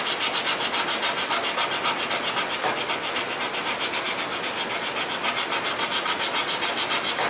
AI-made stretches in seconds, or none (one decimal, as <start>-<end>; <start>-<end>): none